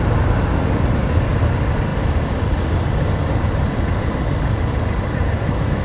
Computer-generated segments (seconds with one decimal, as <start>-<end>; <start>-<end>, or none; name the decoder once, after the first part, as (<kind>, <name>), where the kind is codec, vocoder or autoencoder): none